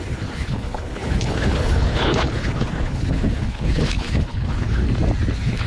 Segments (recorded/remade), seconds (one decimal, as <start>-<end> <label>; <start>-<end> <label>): 0.0-4.8 remade; 4.8-5.3 recorded; 5.3-5.7 remade

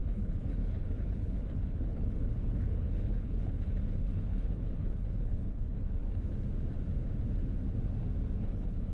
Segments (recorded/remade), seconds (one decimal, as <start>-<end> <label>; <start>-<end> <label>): 0.0-6.0 remade; 6.0-8.4 recorded; 8.4-8.9 remade

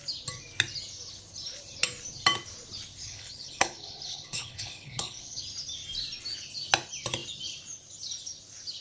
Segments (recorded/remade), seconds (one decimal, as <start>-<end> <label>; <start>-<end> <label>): 0.0-3.0 recorded; 3.0-5.4 remade; 5.4-8.8 recorded

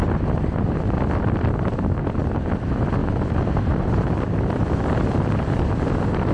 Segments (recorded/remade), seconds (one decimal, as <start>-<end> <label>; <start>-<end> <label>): 0.0-6.3 recorded

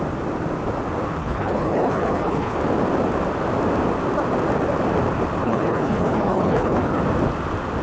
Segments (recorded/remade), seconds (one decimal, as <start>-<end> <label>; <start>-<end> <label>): 0.0-1.2 recorded; 1.2-2.6 remade; 2.6-5.4 recorded; 5.4-7.0 remade; 7.0-7.8 recorded

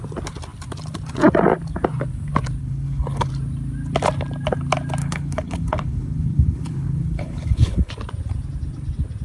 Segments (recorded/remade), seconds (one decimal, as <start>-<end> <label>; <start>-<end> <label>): 0.0-2.6 recorded; 2.6-3.3 remade; 3.3-5.0 recorded; 5.0-7.9 remade; 7.9-9.2 recorded

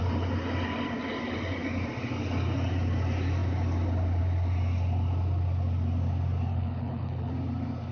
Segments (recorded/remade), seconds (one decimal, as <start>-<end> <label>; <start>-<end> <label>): 0.0-6.5 recorded; 6.5-7.3 remade; 7.3-7.9 recorded